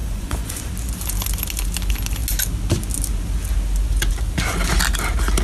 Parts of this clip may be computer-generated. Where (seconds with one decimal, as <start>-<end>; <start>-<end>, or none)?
0.0-0.7